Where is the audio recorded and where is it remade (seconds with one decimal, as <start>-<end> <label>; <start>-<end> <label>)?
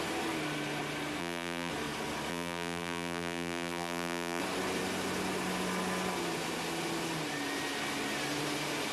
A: 0.0-1.2 recorded; 1.2-1.7 remade; 1.7-2.3 recorded; 2.3-4.4 remade; 4.4-8.9 recorded